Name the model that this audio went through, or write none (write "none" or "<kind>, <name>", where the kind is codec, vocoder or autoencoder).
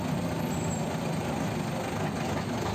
none